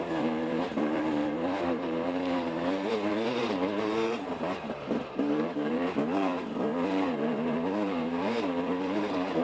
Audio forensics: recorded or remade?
remade